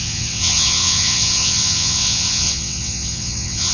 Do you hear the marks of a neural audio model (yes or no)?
yes